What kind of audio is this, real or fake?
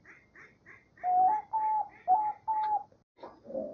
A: real